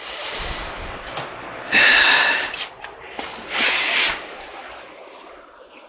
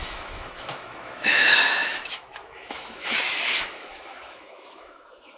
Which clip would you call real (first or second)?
first